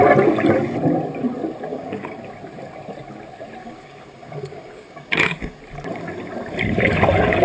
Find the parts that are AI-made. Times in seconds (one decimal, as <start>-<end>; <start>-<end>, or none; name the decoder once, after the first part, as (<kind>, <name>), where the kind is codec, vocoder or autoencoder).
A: 1.7-2.2 (codec, DAC); 3.6-5.6